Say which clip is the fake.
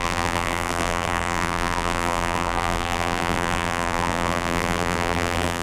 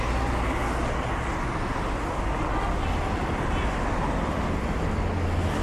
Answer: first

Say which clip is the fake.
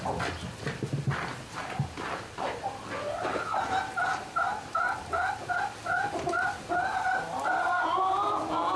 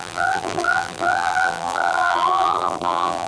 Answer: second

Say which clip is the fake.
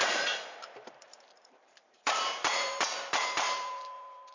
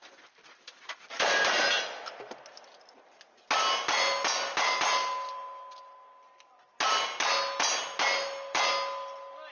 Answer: first